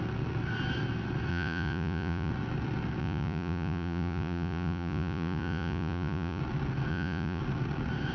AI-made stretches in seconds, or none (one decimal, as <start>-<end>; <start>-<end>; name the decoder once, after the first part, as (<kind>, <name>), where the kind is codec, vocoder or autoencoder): 1.3-2.3 (vocoder, Vocos); 3.0-6.4; 6.9-7.4